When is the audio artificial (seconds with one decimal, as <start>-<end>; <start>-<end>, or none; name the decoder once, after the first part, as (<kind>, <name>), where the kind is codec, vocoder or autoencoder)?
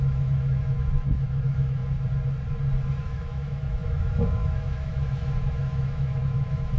0.0-1.8 (autoencoder, DAC-VAE); 3.0-6.8